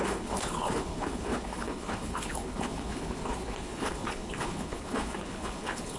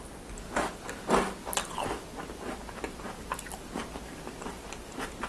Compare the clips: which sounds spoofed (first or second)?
first